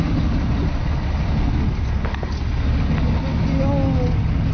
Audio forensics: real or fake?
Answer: real